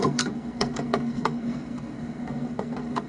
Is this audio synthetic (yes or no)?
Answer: yes